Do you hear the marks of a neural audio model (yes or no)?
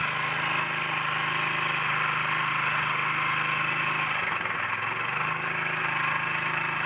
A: no